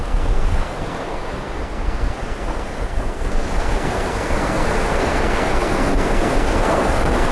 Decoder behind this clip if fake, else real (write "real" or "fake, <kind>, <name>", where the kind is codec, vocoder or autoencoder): fake, codec, SNAC